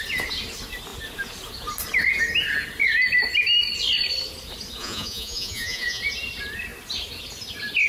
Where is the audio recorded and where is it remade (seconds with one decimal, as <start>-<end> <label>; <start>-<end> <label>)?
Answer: 0.0-4.8 recorded; 4.8-6.0 remade; 6.0-7.9 recorded